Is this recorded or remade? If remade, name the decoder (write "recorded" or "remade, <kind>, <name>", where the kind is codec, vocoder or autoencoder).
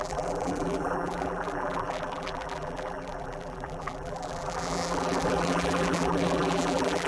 remade, vocoder, BigVGAN v2